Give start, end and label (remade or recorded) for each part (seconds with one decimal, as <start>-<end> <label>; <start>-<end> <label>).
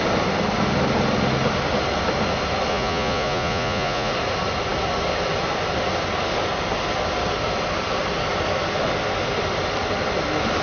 0.0-2.7 recorded; 2.7-4.1 remade; 4.1-10.6 recorded